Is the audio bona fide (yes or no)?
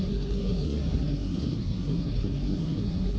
no